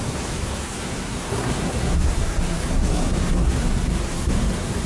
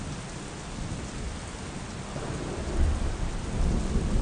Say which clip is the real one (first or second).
second